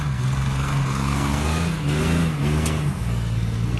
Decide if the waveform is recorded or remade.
remade